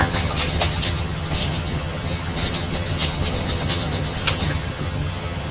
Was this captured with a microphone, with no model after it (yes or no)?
no